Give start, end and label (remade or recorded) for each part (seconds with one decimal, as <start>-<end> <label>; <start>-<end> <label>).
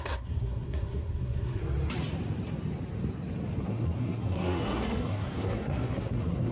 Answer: 0.0-1.6 remade; 1.6-3.6 recorded; 3.6-6.5 remade